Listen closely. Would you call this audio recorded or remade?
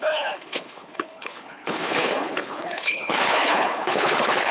remade